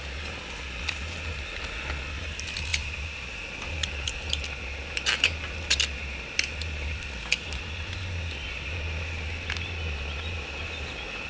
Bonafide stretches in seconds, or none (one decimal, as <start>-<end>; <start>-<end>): 0.0-2.7; 4.3-11.3